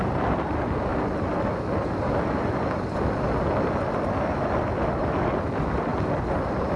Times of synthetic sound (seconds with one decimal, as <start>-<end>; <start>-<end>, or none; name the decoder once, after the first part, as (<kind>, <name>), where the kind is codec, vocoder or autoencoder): 0.0-0.9 (vocoder, BigVGAN v2); 5.0-6.8